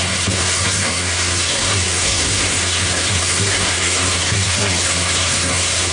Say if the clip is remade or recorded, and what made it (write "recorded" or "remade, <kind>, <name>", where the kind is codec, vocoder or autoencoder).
remade, codec, SNAC